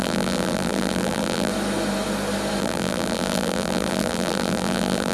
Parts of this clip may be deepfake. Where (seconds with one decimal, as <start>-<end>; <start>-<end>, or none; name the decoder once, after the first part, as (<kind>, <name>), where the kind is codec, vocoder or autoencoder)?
0.0-1.5 (vocoder, BigVGAN v2); 2.6-5.1